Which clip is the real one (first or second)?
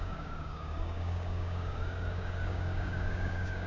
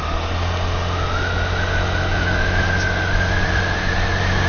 second